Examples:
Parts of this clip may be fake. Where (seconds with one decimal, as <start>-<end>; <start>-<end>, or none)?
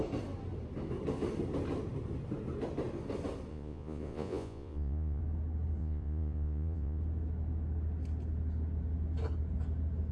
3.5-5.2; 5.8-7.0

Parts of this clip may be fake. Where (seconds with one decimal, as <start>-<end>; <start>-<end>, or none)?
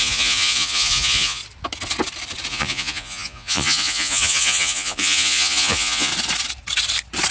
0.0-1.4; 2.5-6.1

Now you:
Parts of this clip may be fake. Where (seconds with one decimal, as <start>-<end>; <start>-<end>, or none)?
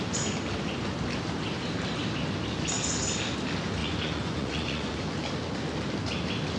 3.8-5.0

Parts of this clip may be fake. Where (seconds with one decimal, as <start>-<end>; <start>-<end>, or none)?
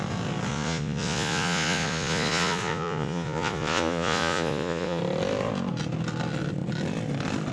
0.5-5.0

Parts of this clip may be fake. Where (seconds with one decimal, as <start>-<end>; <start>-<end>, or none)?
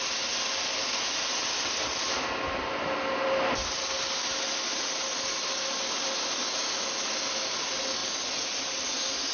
none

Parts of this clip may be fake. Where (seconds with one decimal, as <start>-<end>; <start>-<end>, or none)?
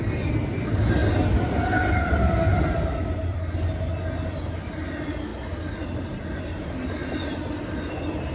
none